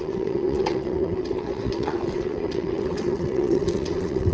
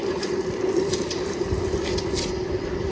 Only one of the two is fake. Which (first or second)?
first